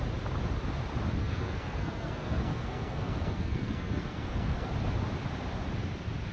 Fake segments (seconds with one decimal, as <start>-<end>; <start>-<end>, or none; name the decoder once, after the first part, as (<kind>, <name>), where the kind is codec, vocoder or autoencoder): 1.2-4.7 (codec, SNAC)